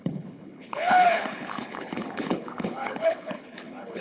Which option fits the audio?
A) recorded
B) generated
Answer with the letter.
B